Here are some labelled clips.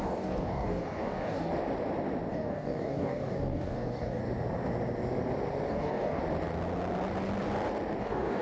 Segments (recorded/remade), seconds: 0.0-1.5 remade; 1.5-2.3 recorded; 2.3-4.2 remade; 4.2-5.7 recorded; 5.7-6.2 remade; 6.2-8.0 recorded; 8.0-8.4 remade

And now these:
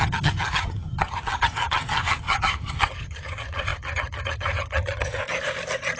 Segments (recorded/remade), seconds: 0.0-5.2 remade; 5.2-6.0 recorded

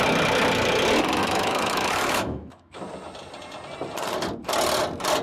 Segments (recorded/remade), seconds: 0.0-1.2 recorded; 1.2-2.8 remade; 2.8-5.2 recorded